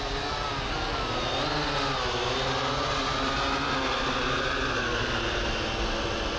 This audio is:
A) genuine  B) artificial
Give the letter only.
A